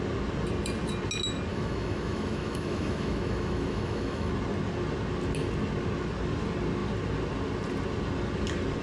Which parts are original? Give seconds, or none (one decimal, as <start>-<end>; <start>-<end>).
0.0-1.5; 4.3-8.8